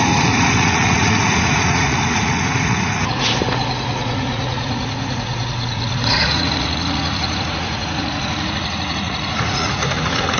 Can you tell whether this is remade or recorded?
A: remade